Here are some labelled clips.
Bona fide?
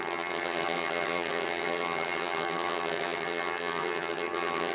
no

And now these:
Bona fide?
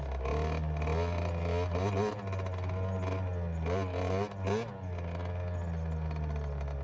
yes